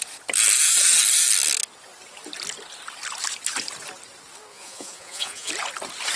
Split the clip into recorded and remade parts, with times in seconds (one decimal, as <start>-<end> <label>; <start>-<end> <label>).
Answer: 0.0-4.5 recorded; 4.5-5.5 remade; 5.5-6.2 recorded